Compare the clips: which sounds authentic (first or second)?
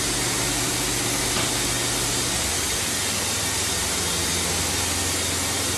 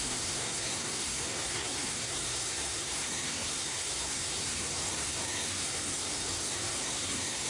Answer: first